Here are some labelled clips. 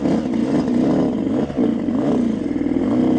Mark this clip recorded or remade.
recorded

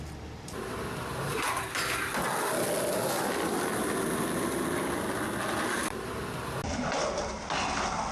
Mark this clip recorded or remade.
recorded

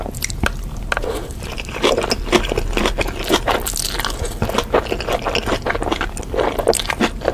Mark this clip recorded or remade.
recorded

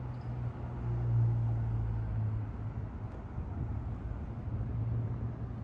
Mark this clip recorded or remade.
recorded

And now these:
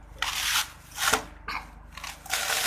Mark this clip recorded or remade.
recorded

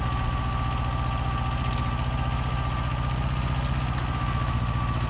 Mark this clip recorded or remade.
recorded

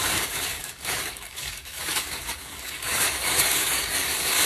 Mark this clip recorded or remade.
remade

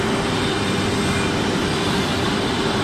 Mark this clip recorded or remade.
recorded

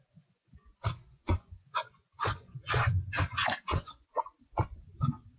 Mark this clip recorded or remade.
remade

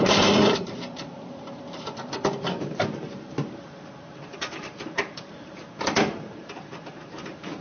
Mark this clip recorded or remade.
remade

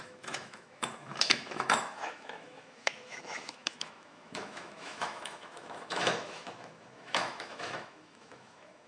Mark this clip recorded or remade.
remade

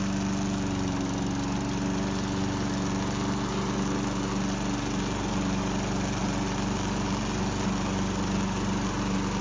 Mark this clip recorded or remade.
recorded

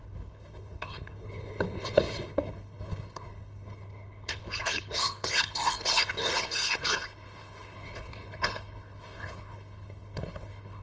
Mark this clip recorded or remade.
remade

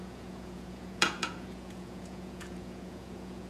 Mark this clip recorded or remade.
remade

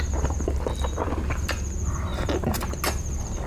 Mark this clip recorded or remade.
recorded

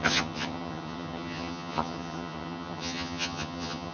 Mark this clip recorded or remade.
remade